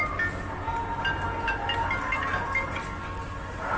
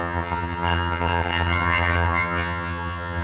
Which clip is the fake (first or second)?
second